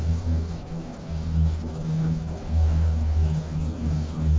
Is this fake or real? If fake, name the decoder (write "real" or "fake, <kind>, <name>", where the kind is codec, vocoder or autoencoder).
fake, codec, DAC